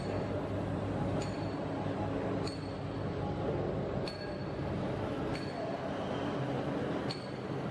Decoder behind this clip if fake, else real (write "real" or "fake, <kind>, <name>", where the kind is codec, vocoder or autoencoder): real